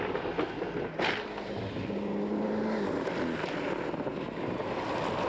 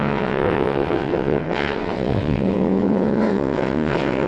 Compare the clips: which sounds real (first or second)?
first